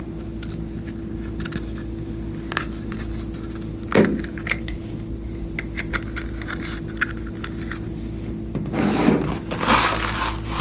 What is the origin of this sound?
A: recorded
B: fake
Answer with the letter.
A